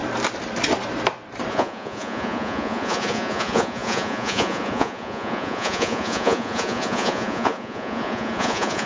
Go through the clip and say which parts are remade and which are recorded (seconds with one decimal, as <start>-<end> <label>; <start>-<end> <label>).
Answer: 0.0-1.5 recorded; 1.5-8.9 remade